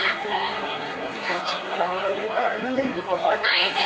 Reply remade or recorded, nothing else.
remade